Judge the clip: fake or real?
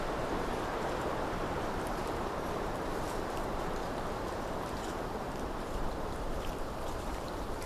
fake